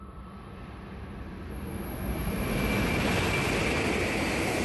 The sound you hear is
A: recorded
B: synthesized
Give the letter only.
A